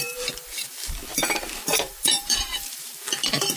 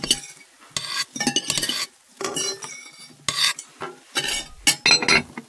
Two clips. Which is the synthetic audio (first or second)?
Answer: first